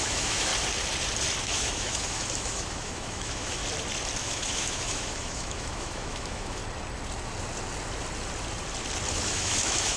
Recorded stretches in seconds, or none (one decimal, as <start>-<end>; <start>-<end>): 0.5-1.4; 3.6-4.2; 6.6-9.1